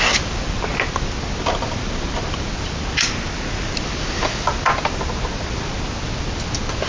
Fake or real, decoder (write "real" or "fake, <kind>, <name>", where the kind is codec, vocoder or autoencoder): real